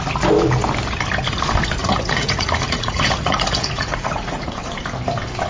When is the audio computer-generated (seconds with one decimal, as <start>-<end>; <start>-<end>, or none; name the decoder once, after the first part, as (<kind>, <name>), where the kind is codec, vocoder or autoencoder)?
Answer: 1.8-4.7 (vocoder, Vocos)